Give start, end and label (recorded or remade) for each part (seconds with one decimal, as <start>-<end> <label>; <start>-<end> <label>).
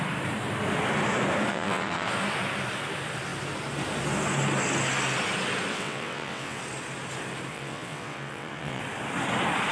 0.0-1.5 recorded; 1.5-2.1 remade; 2.1-5.7 recorded; 5.7-6.6 remade; 6.6-7.5 recorded; 7.5-8.8 remade; 8.8-9.7 recorded